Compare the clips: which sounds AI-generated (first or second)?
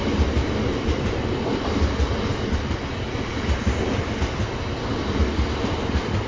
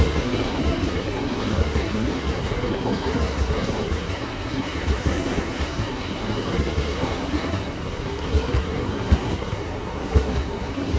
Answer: second